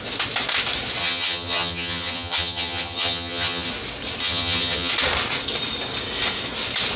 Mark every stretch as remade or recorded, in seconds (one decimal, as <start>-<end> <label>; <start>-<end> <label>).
0.0-1.0 recorded; 1.0-3.7 remade; 3.7-4.2 recorded; 4.2-4.9 remade; 4.9-7.0 recorded